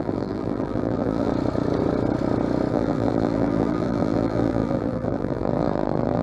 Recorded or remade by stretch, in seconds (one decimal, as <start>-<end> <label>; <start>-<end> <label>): 0.0-1.3 remade; 1.3-2.7 recorded; 2.7-6.2 remade